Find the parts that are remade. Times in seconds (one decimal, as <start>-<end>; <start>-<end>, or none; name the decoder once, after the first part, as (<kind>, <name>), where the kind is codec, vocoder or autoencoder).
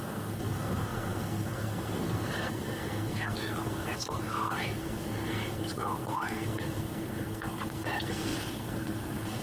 0.0-9.4 (codec, SNAC)